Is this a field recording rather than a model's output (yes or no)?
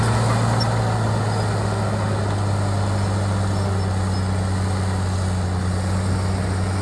yes